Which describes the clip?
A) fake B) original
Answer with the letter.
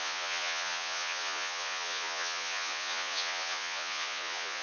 A